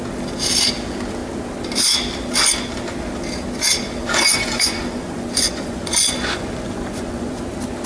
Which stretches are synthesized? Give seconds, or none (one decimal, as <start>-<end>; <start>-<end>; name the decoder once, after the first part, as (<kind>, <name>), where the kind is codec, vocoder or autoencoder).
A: 4.0-7.4 (vocoder, Vocos)